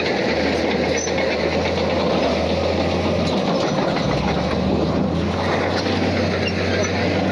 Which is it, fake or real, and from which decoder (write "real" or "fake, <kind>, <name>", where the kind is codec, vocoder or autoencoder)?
real